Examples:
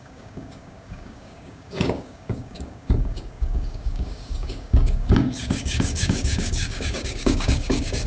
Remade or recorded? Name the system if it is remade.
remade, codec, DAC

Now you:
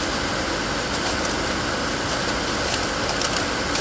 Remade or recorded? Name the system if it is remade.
recorded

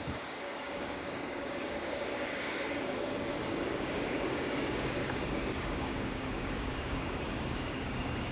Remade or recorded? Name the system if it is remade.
remade, codec, DAC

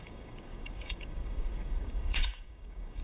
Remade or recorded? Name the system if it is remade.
remade, codec, DAC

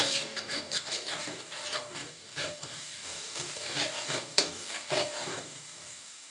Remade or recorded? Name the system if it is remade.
remade, codec, DAC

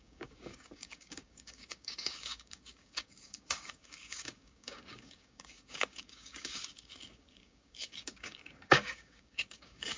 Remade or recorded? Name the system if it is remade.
remade, codec, DAC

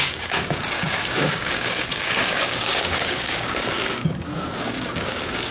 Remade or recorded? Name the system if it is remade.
remade, codec, DAC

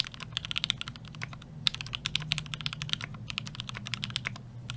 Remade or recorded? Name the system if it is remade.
recorded